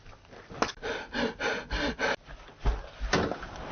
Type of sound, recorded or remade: recorded